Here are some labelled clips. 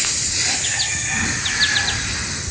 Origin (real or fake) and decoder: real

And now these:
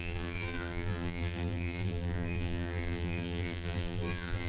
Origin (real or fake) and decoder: fake, vocoder, BigVGAN v2